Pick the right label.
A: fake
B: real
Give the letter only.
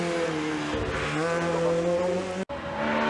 B